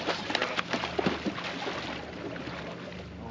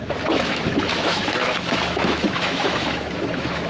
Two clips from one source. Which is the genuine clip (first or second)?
first